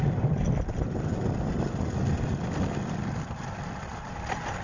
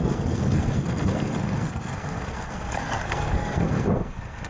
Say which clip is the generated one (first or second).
second